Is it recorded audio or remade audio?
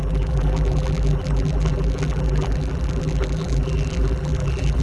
remade